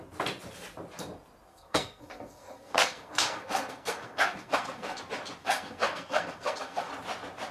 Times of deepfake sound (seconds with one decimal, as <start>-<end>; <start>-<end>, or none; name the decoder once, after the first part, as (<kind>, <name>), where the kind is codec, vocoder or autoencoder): 1.5-5.0 (codec, SNAC); 5.4-6.9